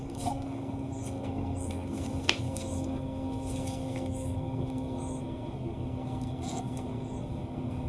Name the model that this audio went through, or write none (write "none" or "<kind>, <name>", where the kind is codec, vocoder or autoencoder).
codec, SNAC